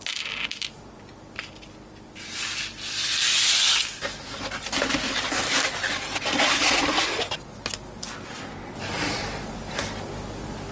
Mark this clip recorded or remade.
recorded